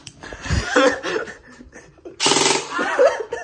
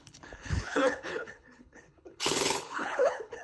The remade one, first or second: second